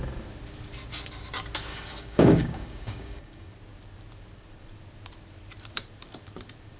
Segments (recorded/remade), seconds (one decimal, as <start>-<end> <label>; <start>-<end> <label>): 0.0-1.7 recorded; 1.7-3.5 remade; 3.5-6.8 recorded